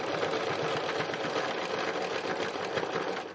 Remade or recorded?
recorded